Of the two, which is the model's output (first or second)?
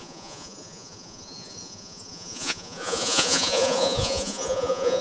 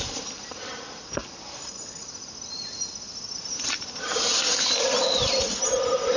first